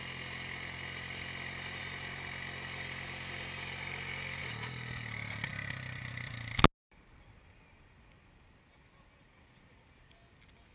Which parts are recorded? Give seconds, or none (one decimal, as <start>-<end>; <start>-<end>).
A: 0.0-10.7